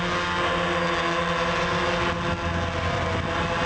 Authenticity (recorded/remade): recorded